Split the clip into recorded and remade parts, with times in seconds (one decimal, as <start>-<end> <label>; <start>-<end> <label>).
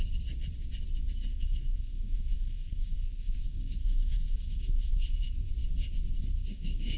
0.0-1.3 recorded; 1.3-5.5 remade; 5.5-6.3 recorded; 6.3-7.0 remade